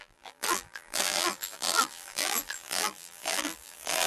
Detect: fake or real fake